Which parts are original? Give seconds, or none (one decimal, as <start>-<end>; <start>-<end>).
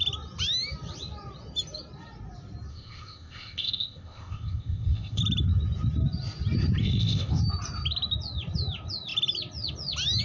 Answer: 0.0-2.7; 5.2-6.8; 7.4-10.2